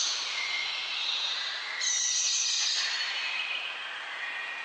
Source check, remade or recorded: recorded